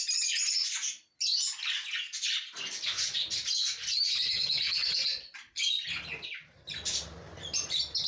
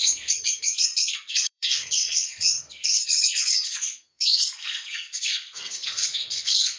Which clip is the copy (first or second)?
second